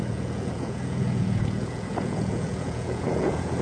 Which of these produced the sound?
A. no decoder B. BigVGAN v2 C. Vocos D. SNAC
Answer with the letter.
C